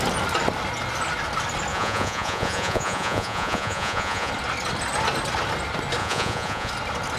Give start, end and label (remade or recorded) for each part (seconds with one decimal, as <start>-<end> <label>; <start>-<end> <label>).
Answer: 0.0-1.7 recorded; 1.7-4.3 remade; 4.3-6.0 recorded; 6.0-6.7 remade; 6.7-7.2 recorded